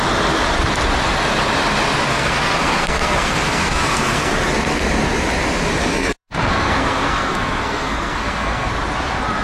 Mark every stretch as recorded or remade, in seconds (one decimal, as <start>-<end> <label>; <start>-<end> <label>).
0.0-2.1 recorded; 2.1-4.3 remade; 4.3-5.8 recorded; 5.8-8.7 remade; 8.7-9.4 recorded